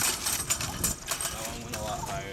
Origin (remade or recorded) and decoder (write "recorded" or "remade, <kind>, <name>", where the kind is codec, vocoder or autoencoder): recorded